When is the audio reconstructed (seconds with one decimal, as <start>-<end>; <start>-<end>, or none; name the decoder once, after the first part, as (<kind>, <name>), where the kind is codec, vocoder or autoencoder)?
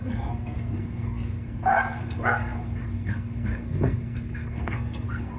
0.0-5.4 (codec, SNAC)